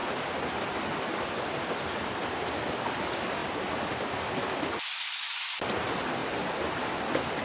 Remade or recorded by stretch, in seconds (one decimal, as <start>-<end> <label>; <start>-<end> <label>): 0.0-7.4 recorded